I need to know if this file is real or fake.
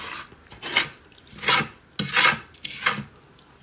real